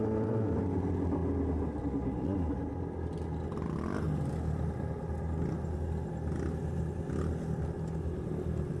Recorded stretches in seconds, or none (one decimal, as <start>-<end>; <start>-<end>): 0.0-8.8